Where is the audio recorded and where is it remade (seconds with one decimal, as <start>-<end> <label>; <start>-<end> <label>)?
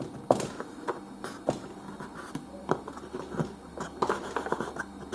0.0-5.1 recorded